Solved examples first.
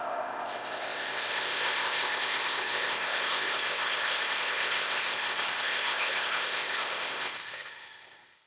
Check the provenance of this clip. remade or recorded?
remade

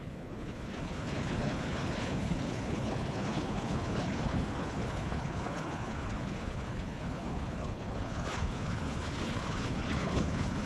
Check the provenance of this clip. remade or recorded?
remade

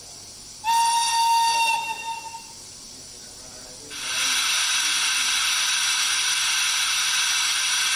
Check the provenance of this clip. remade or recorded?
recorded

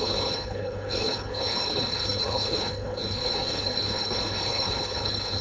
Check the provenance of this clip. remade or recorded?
remade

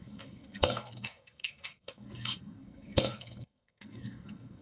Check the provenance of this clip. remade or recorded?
remade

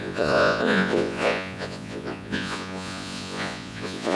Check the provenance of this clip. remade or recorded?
remade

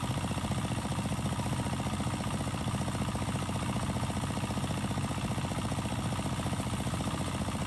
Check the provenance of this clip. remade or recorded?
recorded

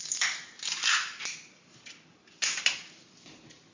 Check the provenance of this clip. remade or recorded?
recorded